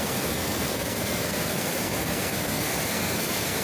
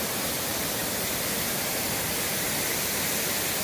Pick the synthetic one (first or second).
first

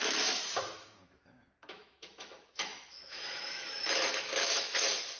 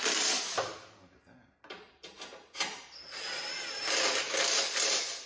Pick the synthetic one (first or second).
first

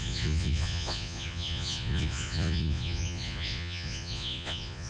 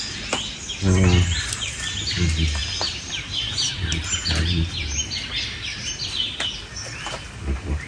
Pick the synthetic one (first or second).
first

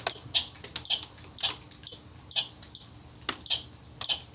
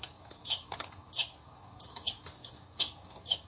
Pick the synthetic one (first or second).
second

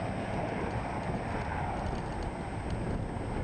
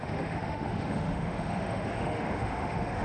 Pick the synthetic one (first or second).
second